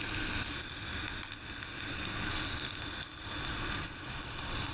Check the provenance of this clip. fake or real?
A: real